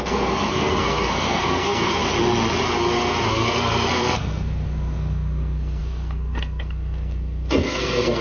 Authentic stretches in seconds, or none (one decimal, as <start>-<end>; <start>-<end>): 2.0-3.3